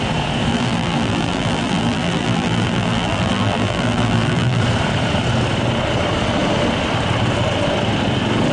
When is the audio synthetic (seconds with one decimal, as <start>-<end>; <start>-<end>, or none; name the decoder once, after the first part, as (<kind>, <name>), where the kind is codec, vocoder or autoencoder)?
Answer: 0.5-4.6 (vocoder, BigVGAN v2)

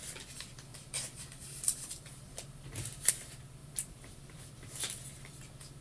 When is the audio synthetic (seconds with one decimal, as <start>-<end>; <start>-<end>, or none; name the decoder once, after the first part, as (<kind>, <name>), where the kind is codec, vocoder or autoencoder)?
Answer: 0.7-3.1 (vocoder, BigVGAN v2); 3.6-4.5

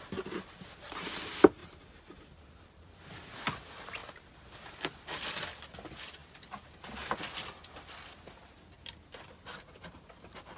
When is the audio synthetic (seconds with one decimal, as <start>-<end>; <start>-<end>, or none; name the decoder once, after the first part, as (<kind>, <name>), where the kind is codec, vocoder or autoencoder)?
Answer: none

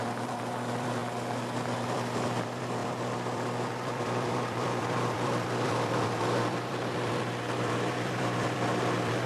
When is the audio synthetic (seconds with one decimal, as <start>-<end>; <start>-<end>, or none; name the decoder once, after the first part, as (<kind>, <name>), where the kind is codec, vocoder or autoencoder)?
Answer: 0.0-1.0 (vocoder, BigVGAN v2); 1.8-9.3

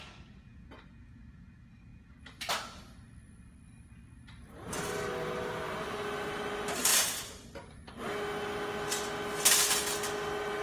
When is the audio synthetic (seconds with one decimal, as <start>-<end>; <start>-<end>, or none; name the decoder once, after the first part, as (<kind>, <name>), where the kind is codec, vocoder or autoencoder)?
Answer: none

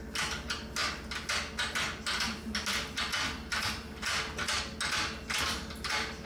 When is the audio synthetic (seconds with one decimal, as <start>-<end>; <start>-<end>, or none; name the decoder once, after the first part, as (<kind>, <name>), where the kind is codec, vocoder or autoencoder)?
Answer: none